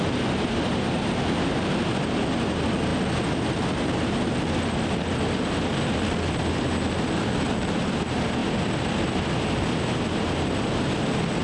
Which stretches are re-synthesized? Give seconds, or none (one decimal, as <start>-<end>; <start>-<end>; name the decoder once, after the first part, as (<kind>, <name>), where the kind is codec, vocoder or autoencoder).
none